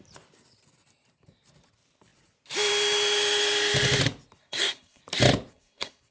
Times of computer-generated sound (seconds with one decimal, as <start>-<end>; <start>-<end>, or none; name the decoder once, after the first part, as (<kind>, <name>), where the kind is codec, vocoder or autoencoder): 4.4-5.0 (codec, SNAC); 5.5-6.1